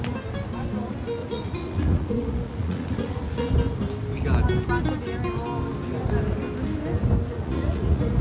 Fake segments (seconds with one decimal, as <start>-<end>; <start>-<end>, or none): 1.2-3.5; 7.3-8.2